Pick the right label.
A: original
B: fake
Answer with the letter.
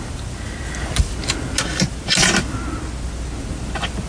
A